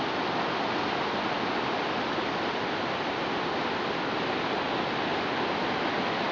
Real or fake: real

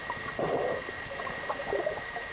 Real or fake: real